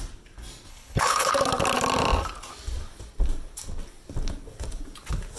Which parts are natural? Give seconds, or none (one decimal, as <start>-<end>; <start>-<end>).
0.0-0.7; 1.3-5.4